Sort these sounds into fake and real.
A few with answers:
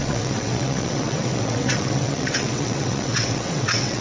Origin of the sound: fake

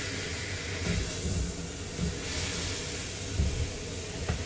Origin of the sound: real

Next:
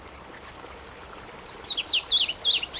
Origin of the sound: real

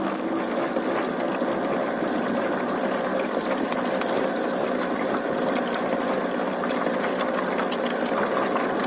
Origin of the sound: real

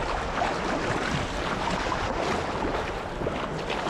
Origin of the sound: real